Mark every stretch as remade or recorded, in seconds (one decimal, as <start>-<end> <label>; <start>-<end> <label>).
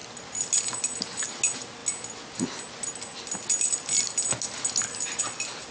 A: 0.0-5.7 recorded